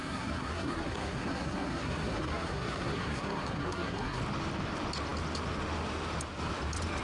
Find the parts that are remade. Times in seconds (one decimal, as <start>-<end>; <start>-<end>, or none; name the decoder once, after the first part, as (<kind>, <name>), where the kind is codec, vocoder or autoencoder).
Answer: 0.0-4.2 (codec, SNAC)

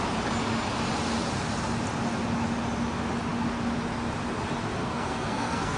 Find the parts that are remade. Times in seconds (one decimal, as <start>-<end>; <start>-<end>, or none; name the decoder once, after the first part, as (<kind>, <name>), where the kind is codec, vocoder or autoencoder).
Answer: 4.8-5.8 (codec, SNAC)

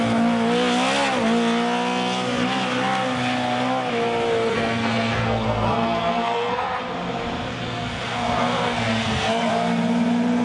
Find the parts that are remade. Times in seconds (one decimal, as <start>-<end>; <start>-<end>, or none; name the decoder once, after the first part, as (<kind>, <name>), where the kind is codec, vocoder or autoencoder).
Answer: 4.5-6.8 (codec, SNAC); 7.5-9.5

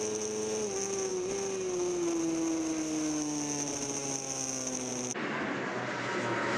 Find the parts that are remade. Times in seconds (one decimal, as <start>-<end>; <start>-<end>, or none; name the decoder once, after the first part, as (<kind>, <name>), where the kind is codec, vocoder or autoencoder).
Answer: none

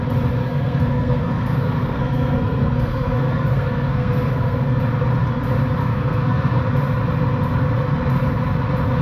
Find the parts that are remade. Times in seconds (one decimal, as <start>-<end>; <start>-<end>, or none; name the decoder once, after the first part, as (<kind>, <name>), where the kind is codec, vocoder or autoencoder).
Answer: 0.4-4.8 (codec, SNAC); 5.8-6.6